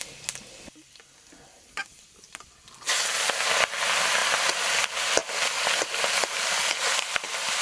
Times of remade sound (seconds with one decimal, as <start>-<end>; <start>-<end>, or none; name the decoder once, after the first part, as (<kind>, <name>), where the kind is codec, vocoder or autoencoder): 4.2-4.7 (vocoder, BigVGAN v2); 5.2-7.6